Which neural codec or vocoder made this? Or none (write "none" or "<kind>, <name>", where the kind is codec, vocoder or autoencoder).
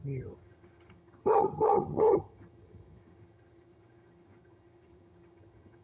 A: vocoder, HiFi-GAN